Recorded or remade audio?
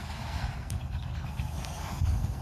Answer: remade